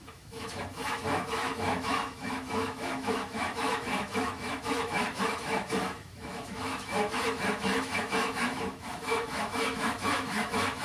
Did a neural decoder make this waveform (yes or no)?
yes